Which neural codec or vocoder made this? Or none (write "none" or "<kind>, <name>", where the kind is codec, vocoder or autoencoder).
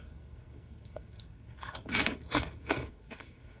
codec, SNAC